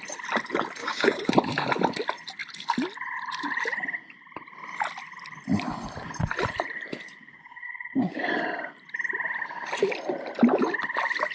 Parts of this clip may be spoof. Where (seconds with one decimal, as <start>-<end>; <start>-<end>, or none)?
0.8-1.3; 7.3-8.2